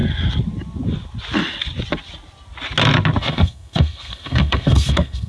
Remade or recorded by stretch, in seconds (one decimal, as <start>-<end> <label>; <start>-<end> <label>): 0.0-3.2 recorded; 3.2-5.3 remade

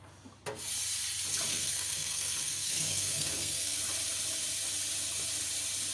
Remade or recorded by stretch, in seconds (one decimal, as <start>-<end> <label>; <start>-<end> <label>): 0.0-1.5 recorded; 1.5-3.8 remade; 3.8-5.9 recorded

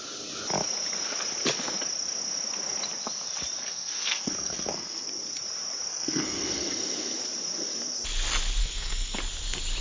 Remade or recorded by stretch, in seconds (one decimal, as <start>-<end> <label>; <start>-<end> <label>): 0.0-3.6 recorded; 3.6-5.1 remade; 5.1-5.9 recorded; 5.9-6.5 remade; 6.5-8.6 recorded; 8.6-9.2 remade; 9.2-9.8 recorded

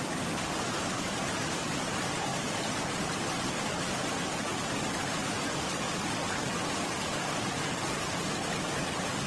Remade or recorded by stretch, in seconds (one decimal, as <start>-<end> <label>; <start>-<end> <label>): 0.0-9.3 recorded

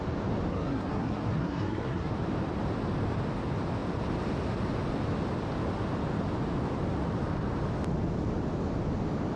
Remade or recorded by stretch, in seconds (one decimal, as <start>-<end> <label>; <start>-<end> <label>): 0.0-0.5 recorded; 0.5-2.1 remade; 2.1-9.4 recorded

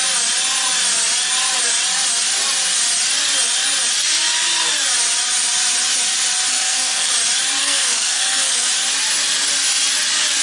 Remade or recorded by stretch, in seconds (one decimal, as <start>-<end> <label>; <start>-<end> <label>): 0.0-6.5 recorded; 6.5-7.1 remade; 7.1-7.6 recorded; 7.6-8.7 remade; 8.7-10.4 recorded